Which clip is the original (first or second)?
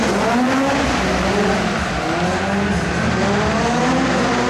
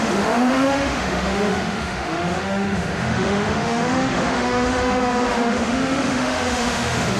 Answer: first